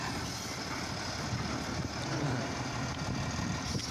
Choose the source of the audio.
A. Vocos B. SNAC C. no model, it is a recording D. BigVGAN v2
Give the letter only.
C